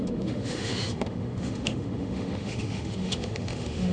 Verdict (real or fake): fake